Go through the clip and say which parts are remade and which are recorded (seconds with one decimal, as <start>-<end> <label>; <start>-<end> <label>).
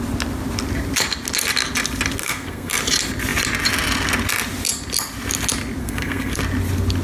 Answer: 0.0-2.2 recorded; 2.2-2.7 remade; 2.7-5.8 recorded; 5.8-6.4 remade; 6.4-7.0 recorded